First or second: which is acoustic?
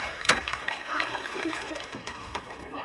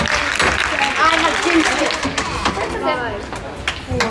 second